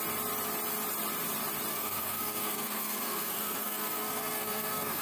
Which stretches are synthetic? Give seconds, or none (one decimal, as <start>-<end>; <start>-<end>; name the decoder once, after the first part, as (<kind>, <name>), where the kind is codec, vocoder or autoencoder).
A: 1.7-5.0 (codec, SNAC)